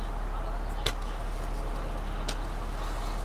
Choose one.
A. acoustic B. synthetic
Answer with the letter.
A